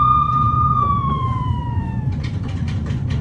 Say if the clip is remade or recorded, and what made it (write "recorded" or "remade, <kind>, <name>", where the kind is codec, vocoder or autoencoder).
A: remade, vocoder, Vocos